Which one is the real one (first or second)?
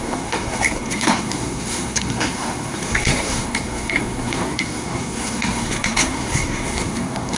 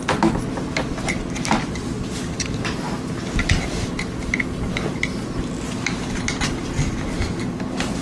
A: second